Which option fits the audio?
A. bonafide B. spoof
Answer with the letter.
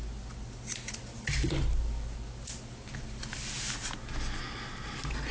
A